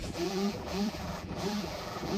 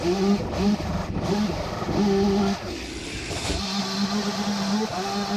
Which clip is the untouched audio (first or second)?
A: second